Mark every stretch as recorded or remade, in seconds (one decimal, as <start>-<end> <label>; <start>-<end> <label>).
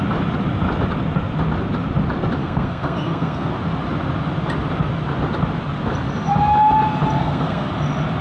0.0-2.4 recorded; 2.4-3.5 remade; 3.5-7.2 recorded; 7.2-7.7 remade; 7.7-8.2 recorded